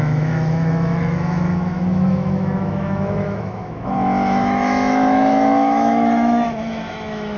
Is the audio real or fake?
fake